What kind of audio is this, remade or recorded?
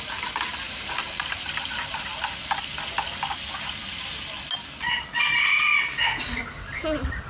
recorded